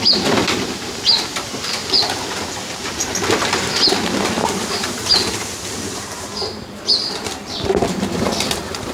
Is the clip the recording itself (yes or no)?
no